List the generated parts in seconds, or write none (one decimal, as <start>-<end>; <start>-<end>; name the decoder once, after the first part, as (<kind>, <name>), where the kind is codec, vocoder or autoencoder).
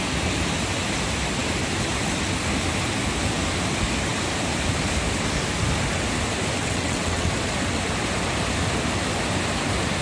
6.6-7.3 (vocoder, WaveNeXt)